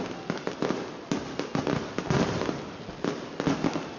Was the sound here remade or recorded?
recorded